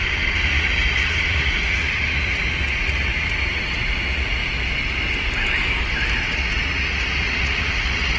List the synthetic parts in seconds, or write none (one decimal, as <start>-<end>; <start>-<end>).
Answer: 0.0-4.4; 6.2-8.2